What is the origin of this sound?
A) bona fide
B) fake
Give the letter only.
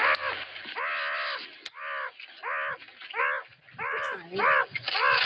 A